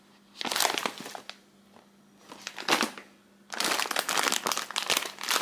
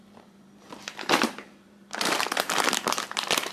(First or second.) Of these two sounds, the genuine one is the first